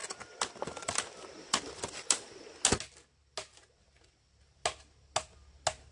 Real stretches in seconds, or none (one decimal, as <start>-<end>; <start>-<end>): 0.0-5.9